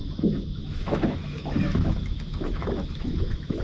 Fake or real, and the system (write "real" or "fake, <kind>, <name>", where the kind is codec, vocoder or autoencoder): fake, autoencoder, DAC-VAE